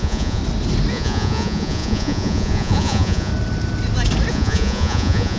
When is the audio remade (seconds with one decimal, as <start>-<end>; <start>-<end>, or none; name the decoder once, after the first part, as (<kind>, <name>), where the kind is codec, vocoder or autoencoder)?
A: 0.0-0.4 (vocoder, Vocos); 0.9-3.3; 4.3-5.4